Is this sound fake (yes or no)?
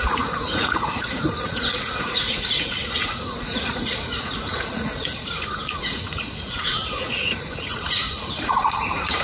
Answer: yes